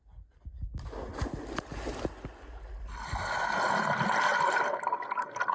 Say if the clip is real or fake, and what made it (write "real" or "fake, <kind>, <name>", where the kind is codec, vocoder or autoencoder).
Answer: real